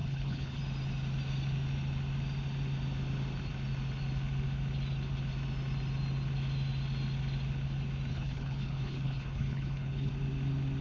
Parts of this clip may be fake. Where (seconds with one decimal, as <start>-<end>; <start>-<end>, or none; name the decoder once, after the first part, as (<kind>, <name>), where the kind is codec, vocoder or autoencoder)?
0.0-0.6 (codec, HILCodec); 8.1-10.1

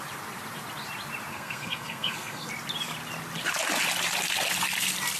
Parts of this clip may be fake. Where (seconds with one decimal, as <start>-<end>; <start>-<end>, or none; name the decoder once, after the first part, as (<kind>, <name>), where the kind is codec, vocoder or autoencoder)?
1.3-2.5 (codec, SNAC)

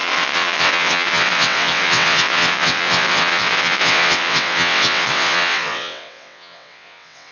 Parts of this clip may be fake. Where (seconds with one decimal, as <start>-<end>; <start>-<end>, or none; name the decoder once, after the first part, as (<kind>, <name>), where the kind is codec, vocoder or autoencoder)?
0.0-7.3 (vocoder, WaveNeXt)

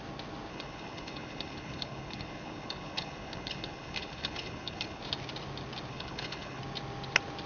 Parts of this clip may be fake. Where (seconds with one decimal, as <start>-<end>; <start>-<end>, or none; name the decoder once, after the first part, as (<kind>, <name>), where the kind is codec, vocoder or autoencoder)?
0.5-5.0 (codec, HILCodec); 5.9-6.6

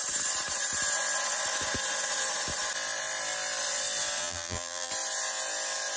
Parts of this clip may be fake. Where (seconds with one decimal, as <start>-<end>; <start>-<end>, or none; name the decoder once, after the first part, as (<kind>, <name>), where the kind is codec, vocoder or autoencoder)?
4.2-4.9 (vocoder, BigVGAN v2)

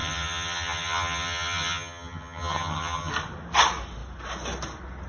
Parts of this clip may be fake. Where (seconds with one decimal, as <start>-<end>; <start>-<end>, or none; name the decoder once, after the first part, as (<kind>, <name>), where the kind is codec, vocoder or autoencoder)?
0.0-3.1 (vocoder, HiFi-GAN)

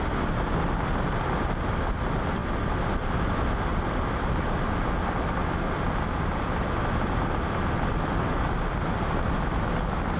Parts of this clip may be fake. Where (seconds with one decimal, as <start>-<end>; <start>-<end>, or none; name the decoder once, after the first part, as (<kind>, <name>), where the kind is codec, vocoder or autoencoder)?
3.7-5.0 (vocoder, BigVGAN v2)

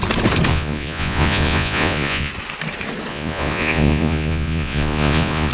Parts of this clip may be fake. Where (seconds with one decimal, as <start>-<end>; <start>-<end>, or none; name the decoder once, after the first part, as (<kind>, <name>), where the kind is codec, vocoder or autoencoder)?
0.5-2.3 (vocoder, Vocos); 3.1-5.5